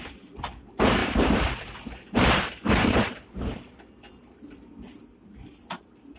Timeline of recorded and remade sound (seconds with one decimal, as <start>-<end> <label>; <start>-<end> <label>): 0.0-1.0 recorded; 1.0-4.7 remade; 4.7-6.2 recorded

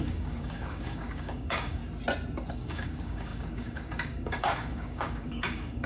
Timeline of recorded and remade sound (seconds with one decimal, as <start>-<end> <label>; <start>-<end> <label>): 0.0-1.8 remade; 1.8-2.5 recorded; 2.5-5.9 remade

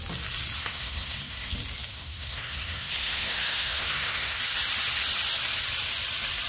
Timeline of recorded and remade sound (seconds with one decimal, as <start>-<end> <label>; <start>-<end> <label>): 0.0-0.6 recorded; 0.6-1.5 remade; 1.5-1.9 recorded; 1.9-4.4 remade; 4.4-6.5 recorded

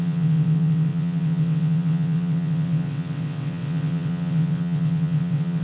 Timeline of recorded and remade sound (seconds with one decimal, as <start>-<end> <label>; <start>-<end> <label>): 0.0-5.6 remade

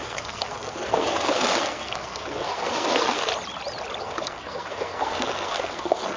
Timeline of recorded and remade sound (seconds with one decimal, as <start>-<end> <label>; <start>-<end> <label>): 0.0-3.3 remade; 3.3-4.0 recorded; 4.0-6.2 remade